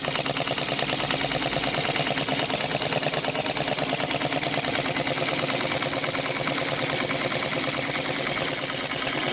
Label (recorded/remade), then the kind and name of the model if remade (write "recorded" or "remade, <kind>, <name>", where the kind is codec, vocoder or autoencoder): recorded